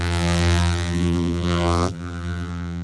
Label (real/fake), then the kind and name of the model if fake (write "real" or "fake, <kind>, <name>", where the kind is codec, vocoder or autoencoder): fake, vocoder, BigVGAN v2